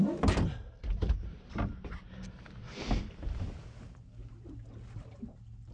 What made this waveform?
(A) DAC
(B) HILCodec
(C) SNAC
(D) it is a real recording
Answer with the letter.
D